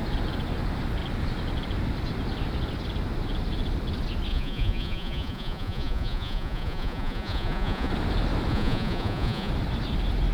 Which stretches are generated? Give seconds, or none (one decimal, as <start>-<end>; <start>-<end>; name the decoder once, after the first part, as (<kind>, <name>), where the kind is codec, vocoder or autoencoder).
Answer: 4.3-7.9 (vocoder, Vocos); 8.5-9.5